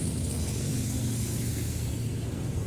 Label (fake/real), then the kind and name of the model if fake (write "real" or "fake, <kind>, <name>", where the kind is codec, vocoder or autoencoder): fake, codec, SNAC